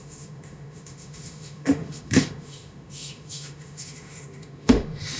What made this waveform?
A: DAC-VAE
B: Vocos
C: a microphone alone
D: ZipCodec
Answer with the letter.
A